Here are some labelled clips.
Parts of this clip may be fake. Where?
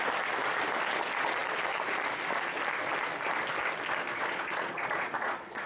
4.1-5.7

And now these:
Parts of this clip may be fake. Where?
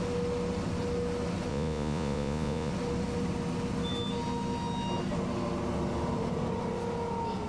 1.5-2.7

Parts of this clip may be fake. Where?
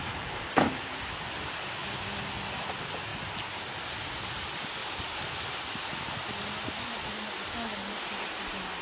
none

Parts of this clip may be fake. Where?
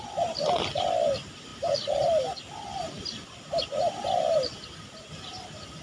none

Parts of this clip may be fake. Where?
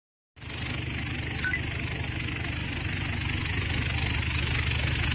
2.6-3.7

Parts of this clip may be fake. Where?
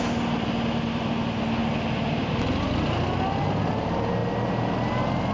none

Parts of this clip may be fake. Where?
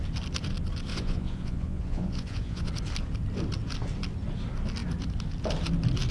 0.9-2.7